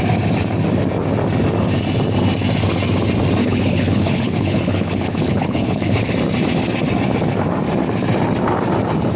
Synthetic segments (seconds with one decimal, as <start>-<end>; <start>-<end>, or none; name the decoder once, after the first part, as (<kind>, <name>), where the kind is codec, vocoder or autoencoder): 3.4-6.1 (codec, HILCodec)